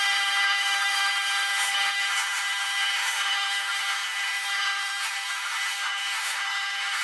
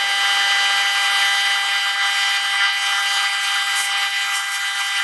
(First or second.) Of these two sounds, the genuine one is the second